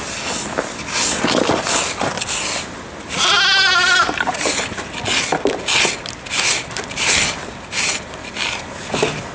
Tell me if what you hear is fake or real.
real